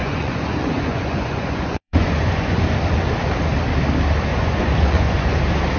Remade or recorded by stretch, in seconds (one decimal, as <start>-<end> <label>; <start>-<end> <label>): 0.0-2.6 remade; 2.6-4.3 recorded; 4.3-5.3 remade; 5.3-5.8 recorded